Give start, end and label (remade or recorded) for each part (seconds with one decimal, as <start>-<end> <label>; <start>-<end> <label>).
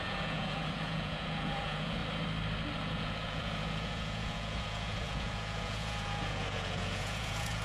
0.0-2.0 remade; 2.0-2.8 recorded; 2.8-7.6 remade